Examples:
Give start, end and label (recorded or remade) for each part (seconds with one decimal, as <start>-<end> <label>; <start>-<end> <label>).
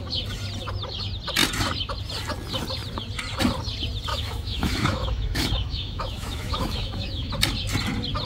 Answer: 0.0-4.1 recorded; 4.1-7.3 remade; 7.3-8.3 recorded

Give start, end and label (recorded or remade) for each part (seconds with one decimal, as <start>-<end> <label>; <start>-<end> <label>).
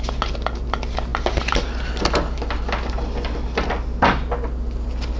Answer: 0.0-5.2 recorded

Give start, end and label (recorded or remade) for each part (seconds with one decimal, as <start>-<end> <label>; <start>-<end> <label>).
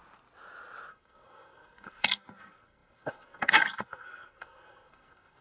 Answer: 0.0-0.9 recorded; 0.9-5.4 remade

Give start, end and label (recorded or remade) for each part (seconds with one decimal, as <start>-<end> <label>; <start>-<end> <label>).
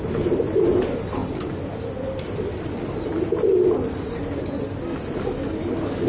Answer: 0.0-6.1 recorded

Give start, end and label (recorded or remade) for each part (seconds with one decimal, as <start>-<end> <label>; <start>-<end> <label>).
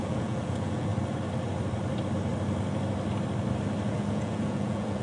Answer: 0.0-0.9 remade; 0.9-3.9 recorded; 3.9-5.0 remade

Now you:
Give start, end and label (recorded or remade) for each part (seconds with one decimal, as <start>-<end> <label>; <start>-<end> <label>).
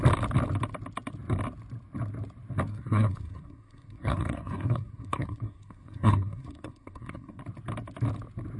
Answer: 0.0-2.7 recorded; 2.7-7.4 remade; 7.4-8.6 recorded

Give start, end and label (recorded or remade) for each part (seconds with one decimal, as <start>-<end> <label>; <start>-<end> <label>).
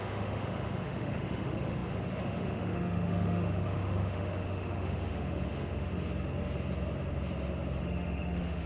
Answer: 0.0-5.9 remade; 5.9-7.8 recorded; 7.8-8.7 remade